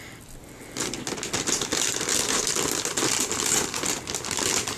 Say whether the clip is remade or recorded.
recorded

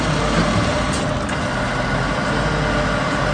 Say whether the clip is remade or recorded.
recorded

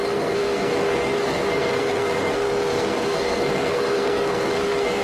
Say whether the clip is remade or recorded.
remade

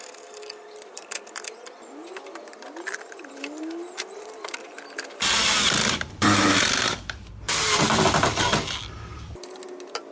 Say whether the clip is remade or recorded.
recorded